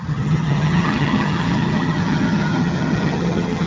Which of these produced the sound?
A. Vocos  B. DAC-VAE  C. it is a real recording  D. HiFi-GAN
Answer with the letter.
D